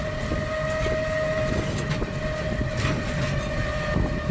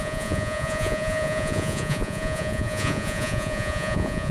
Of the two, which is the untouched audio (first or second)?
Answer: first